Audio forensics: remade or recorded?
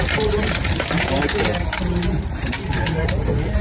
remade